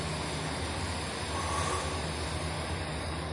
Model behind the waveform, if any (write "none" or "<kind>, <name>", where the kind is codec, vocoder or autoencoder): none